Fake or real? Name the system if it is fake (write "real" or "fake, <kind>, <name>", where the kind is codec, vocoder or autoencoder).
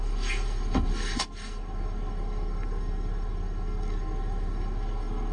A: fake, codec, SNAC